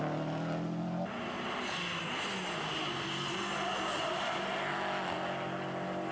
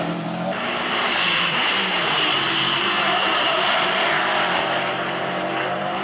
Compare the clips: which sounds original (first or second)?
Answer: first